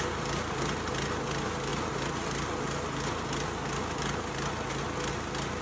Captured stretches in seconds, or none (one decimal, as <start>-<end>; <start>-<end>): 0.0-5.6